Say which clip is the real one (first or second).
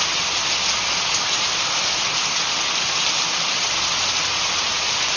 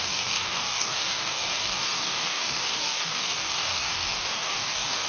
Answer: first